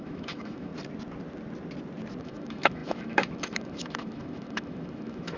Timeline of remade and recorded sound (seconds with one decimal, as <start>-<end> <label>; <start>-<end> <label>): 0.0-0.7 remade; 0.7-2.2 recorded; 2.2-5.4 remade